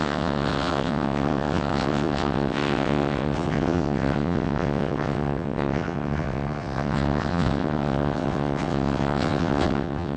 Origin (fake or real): fake